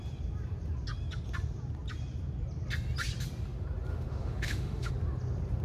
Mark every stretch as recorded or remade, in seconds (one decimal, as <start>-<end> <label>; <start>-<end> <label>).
0.0-3.9 recorded; 3.9-4.9 remade; 4.9-5.6 recorded